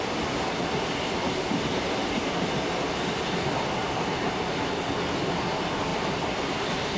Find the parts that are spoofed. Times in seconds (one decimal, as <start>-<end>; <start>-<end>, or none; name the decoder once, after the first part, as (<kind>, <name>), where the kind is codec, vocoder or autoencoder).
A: 3.8-4.8 (vocoder, BigVGAN v2); 5.9-6.6